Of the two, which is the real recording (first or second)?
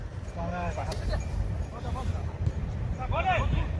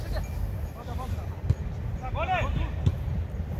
second